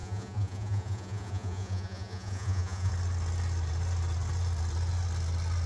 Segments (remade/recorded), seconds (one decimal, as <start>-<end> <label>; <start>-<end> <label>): 0.0-2.9 remade; 2.9-5.7 recorded